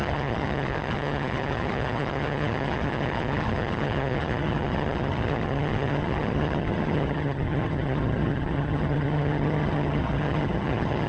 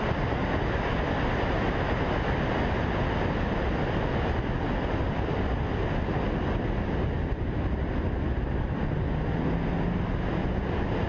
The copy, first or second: first